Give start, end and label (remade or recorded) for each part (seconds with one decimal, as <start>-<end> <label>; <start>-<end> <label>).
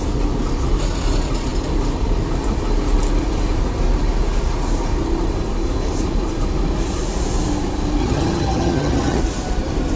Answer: 0.0-8.0 recorded; 8.0-9.2 remade; 9.2-10.0 recorded